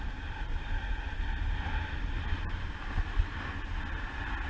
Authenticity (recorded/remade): recorded